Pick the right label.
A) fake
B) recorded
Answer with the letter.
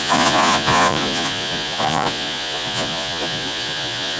A